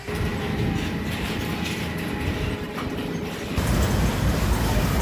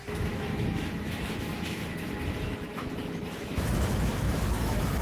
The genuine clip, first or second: first